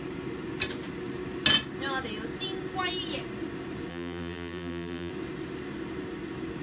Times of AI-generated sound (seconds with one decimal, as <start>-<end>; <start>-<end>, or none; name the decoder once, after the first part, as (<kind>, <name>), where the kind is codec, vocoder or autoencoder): 3.9-5.1 (vocoder, BigVGAN v2)